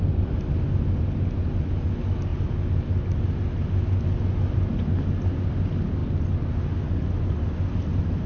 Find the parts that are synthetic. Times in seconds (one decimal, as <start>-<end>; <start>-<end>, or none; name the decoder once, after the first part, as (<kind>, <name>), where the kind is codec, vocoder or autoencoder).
none

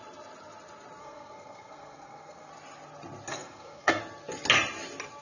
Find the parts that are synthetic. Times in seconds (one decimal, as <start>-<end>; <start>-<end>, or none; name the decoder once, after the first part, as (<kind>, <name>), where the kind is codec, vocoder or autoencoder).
1.0-2.5 (codec, SNAC); 3.3-4.0

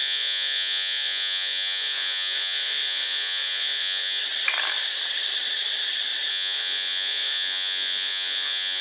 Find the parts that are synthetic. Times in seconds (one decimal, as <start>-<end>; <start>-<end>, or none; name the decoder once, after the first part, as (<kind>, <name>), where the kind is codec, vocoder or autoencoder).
0.0-4.2 (vocoder, Vocos); 6.3-8.8

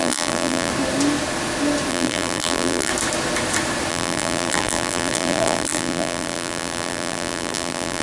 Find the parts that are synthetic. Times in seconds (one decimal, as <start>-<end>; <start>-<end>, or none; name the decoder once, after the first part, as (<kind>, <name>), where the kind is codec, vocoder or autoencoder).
0.0-0.7 (vocoder, BigVGAN v2); 1.9-2.9; 3.9-8.0

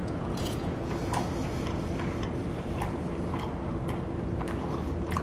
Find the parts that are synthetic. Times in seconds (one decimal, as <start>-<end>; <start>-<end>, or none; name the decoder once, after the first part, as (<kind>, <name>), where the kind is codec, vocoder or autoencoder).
0.0-0.9 (vocoder, Vocos)

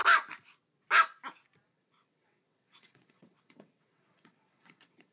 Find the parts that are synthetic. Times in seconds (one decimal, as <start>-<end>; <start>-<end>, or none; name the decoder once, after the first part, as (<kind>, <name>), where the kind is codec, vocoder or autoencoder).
1.7-5.1 (vocoder, WaveNeXt)